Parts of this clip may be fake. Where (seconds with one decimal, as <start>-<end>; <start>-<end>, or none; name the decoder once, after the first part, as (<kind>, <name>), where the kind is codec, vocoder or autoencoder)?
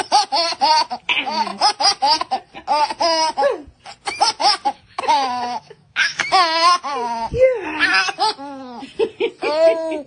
4.4-6.9 (autoencoder, DAC-VAE)